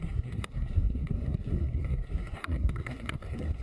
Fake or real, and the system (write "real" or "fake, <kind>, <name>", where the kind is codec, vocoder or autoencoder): fake, codec, SNAC